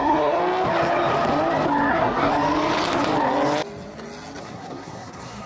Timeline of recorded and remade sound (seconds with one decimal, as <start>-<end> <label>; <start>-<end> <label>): 0.0-0.4 remade; 0.4-1.9 recorded; 1.9-2.3 remade; 2.3-4.4 recorded; 4.4-5.5 remade